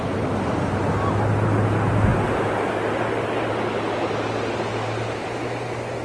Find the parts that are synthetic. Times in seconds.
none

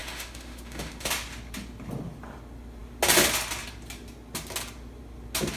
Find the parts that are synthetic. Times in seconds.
0.0-1.1 (autoencoder, DAC-VAE)

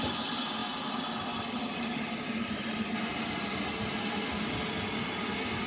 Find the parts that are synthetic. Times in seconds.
none

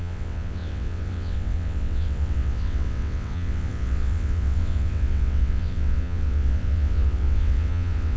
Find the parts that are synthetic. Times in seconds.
0.0-8.2 (vocoder, WaveNeXt)

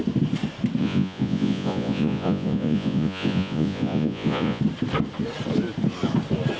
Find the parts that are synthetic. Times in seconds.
0.8-4.6 (vocoder, Vocos)

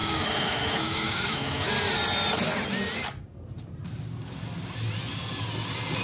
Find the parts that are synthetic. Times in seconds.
0.0-1.7 (autoencoder, DAC-VAE)